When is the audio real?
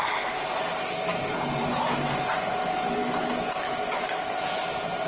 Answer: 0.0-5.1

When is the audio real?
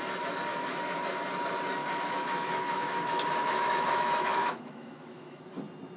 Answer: 0.0-0.5; 1.0-1.8; 5.4-6.0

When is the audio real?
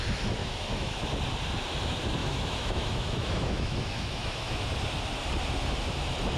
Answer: 0.0-0.4; 1.0-2.2; 4.7-6.4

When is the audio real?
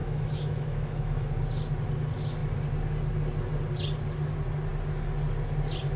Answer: 1.3-6.0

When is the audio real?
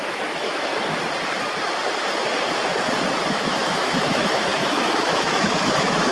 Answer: 0.7-3.3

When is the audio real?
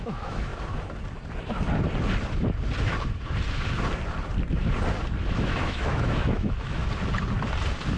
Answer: 0.5-5.3; 6.8-8.0